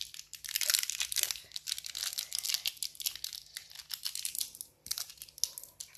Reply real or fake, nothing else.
real